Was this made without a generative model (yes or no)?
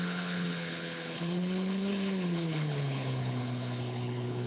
no